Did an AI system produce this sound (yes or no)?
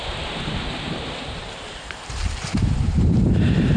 yes